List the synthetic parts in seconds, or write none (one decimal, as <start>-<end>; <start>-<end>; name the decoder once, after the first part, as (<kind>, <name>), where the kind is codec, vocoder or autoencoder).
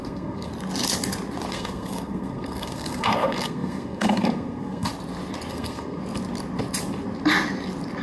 0.0-0.5 (codec, SNAC); 1.5-4.9; 5.5-6.0